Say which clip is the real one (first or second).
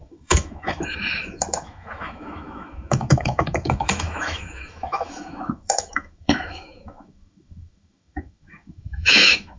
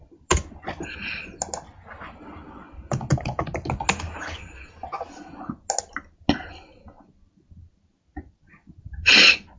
second